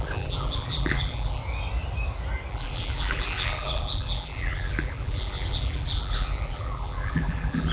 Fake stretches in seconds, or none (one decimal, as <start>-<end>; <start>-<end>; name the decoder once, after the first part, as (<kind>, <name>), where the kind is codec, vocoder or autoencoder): 0.0-1.4 (vocoder, BigVGAN v2); 2.5-7.7